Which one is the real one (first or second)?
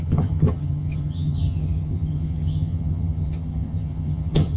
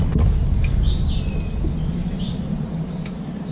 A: second